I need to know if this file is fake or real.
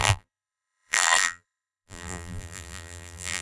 fake